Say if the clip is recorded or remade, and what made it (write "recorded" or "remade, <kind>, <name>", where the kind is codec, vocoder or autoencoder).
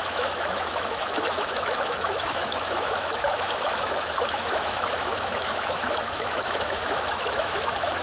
remade, autoencoder, DAC-VAE